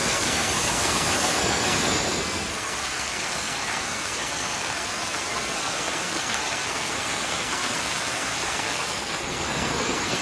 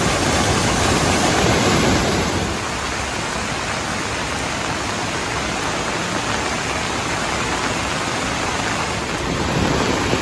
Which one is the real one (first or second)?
second